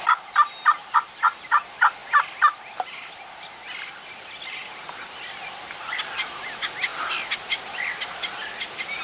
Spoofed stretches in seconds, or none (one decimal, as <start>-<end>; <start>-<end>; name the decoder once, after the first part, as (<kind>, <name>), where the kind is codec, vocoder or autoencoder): none